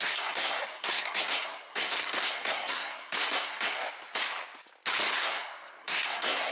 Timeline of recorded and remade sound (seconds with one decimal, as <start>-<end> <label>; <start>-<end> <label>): 0.0-3.8 remade; 3.8-5.1 recorded; 5.1-6.5 remade